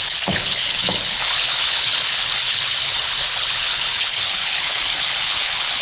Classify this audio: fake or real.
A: fake